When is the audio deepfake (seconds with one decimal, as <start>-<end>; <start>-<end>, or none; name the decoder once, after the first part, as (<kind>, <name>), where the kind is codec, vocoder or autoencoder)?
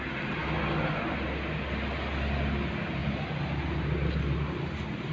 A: none